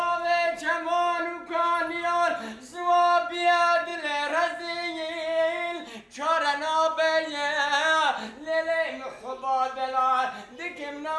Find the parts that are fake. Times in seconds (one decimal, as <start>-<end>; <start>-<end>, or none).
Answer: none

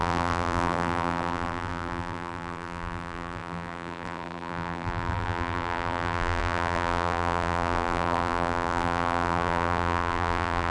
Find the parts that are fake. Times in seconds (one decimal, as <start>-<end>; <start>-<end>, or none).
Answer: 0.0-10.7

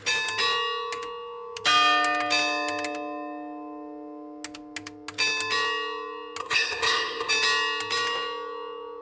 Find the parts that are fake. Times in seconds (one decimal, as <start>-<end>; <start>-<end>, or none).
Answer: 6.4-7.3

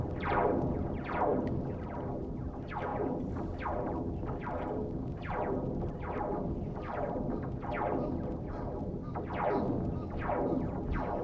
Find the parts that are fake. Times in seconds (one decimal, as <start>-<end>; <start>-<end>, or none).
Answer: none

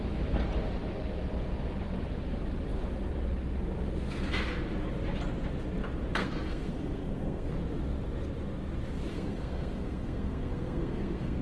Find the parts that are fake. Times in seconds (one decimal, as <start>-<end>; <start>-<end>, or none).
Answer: 6.2-7.5; 9.1-11.4